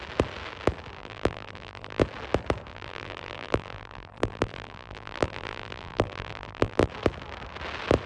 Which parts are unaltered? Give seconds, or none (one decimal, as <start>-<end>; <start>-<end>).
0.0-1.0; 2.0-2.7; 6.9-8.1